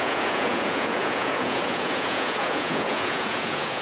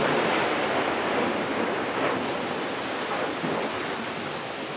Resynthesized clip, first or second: first